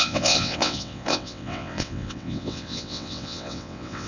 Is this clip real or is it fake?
fake